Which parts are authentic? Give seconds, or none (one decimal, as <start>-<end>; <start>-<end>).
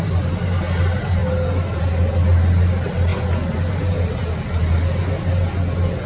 0.0-6.1